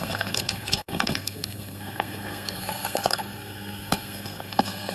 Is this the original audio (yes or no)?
no